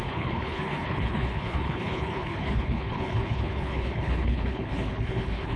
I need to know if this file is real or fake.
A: fake